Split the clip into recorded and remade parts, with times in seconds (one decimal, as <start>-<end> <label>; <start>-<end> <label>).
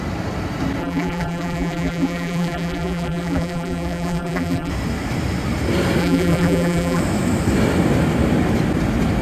0.0-0.8 recorded; 0.8-4.7 remade; 4.7-6.0 recorded; 6.0-7.0 remade; 7.0-9.2 recorded